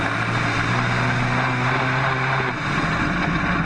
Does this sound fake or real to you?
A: real